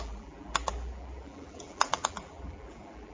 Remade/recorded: remade